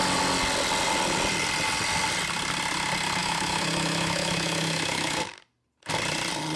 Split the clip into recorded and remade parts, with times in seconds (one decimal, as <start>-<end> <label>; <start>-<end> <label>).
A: 0.0-3.2 recorded; 3.2-5.3 remade; 5.3-6.6 recorded